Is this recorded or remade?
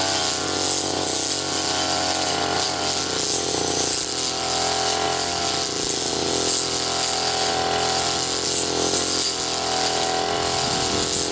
recorded